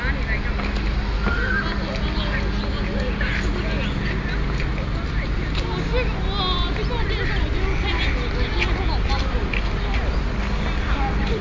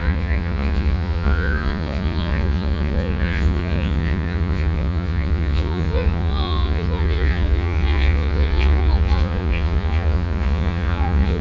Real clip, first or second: first